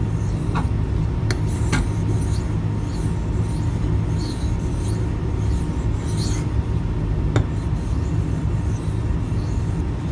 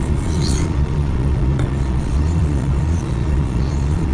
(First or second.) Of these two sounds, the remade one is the second